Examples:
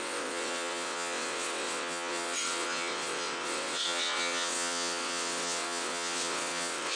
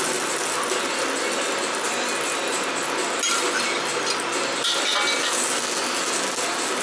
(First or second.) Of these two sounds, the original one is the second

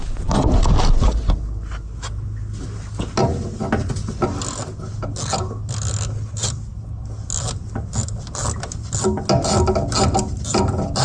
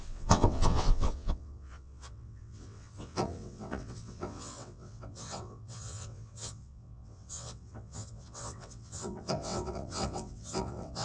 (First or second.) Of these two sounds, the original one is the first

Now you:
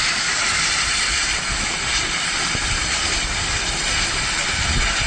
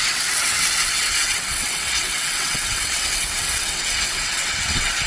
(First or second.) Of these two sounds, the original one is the first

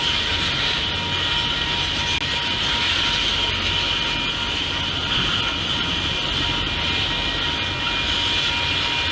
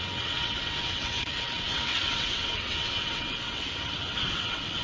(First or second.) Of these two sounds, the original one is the first